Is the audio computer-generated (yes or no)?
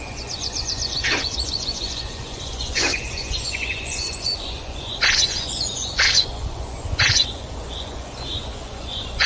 yes